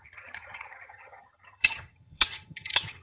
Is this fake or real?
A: fake